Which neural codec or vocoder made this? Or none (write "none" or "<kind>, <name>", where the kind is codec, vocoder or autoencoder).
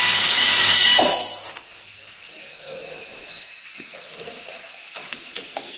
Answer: codec, SNAC